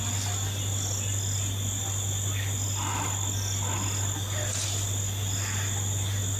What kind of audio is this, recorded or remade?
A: recorded